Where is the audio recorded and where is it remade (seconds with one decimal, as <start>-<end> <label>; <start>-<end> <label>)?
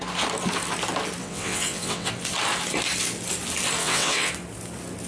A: 0.0-1.2 recorded; 1.2-2.1 remade; 2.1-3.8 recorded; 3.8-4.3 remade; 4.3-5.1 recorded